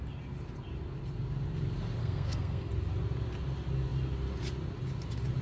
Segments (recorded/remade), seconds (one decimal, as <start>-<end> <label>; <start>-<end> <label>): 0.0-2.0 recorded; 2.0-2.7 remade; 2.7-5.4 recorded